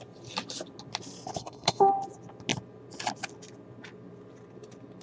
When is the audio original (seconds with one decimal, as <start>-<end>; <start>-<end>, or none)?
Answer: 0.0-1.4; 1.9-5.0